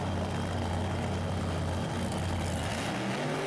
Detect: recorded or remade recorded